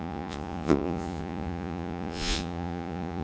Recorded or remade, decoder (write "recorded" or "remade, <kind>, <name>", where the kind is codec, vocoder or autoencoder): remade, vocoder, Vocos